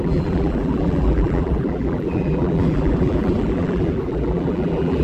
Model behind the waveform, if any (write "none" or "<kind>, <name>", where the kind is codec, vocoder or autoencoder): vocoder, BigVGAN v2